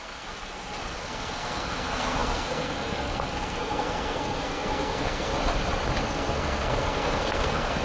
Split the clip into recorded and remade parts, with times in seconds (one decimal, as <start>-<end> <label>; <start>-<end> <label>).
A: 0.0-5.3 remade; 5.3-6.0 recorded; 6.0-7.8 remade